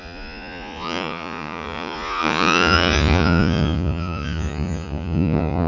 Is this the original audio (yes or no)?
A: no